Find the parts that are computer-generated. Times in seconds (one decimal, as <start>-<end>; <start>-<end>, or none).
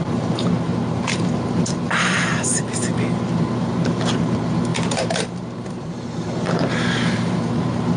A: 0.0-8.0